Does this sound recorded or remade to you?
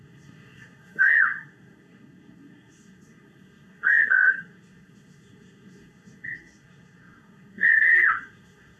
remade